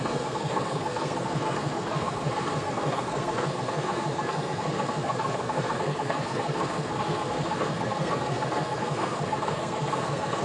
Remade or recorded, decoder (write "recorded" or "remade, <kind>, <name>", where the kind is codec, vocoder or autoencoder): remade, codec, SNAC